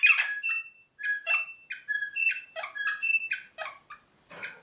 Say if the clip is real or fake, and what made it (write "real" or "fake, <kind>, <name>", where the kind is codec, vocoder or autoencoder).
real